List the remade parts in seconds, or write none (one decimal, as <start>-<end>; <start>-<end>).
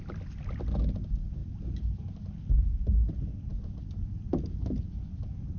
none